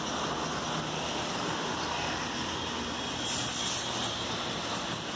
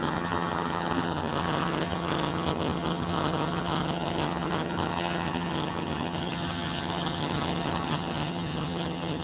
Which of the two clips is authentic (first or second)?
first